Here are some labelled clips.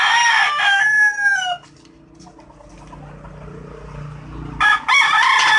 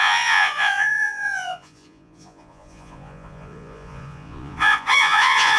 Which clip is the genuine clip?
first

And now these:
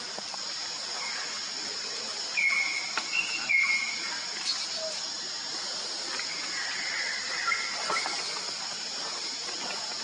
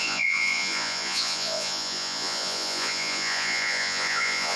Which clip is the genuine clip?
first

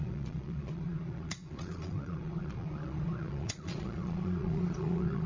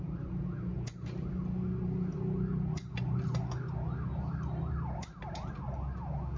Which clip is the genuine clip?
second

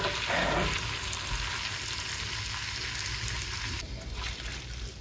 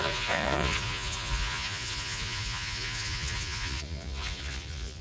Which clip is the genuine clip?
first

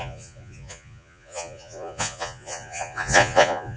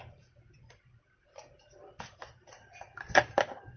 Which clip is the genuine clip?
second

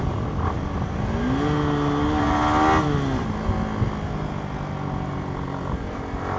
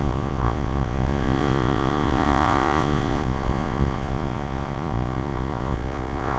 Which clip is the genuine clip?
first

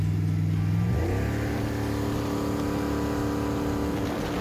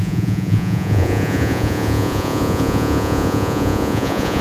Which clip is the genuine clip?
first